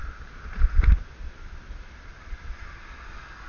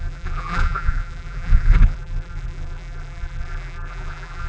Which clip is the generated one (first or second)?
second